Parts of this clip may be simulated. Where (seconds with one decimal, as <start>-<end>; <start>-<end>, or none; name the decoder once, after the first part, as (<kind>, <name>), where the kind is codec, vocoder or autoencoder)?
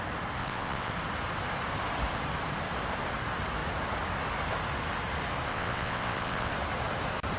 0.4-0.9 (vocoder, WaveNeXt); 5.5-6.5